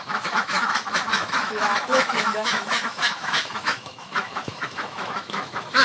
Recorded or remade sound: remade